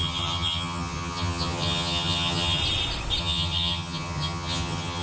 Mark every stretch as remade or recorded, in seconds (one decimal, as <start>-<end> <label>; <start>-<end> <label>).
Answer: 0.0-2.6 remade; 2.6-3.2 recorded; 3.2-5.0 remade